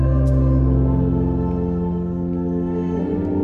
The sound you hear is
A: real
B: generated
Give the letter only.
A